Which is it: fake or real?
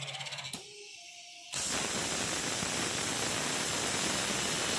real